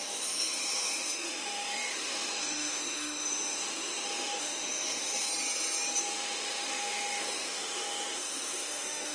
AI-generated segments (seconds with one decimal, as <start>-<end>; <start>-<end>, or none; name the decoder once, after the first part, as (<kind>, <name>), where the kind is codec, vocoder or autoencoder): 0.0-5.3 (autoencoder, DAC-VAE); 6.0-9.1